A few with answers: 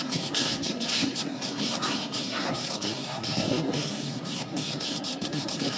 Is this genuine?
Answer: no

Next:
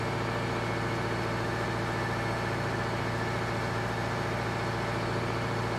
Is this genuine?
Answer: yes